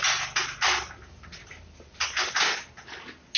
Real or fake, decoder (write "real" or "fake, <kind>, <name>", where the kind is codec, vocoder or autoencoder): real